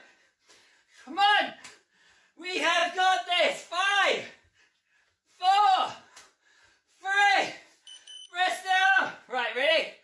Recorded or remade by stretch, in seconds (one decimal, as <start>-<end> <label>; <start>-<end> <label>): 0.0-0.6 remade; 0.6-1.5 recorded; 1.5-7.2 remade; 7.2-7.8 recorded; 7.8-10.0 remade